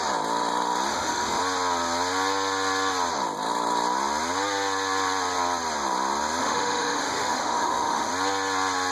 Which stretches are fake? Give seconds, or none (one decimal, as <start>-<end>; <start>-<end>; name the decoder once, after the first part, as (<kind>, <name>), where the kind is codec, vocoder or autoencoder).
0.9-1.4 (autoencoder, DAC-VAE); 6.4-8.1